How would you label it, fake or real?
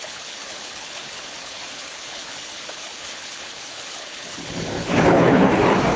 fake